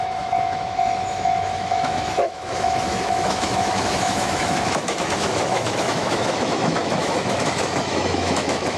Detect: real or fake fake